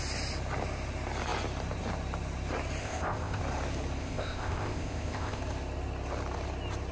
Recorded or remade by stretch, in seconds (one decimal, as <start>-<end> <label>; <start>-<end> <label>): 0.0-2.8 recorded; 2.8-3.4 remade; 3.4-4.0 recorded; 4.0-5.4 remade; 5.4-6.9 recorded